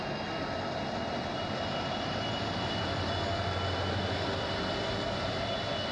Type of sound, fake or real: real